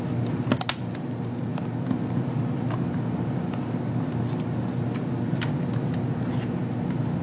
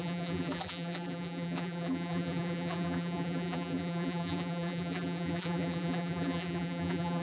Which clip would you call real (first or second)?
first